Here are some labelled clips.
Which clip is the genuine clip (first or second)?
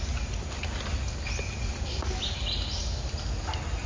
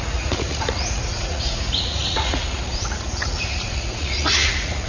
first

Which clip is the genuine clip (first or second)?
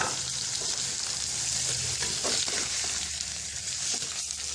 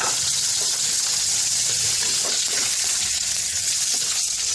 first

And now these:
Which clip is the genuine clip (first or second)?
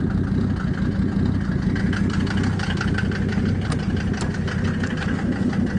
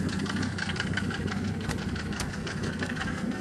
first